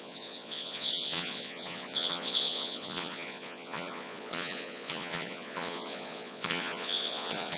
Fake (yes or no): yes